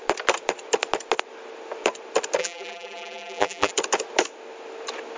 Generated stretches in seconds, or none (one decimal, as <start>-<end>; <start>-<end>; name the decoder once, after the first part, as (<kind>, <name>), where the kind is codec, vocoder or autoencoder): 2.4-3.7 (vocoder, BigVGAN v2)